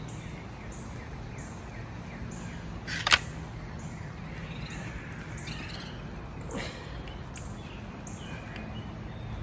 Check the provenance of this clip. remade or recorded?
recorded